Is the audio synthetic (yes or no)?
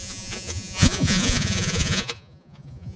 yes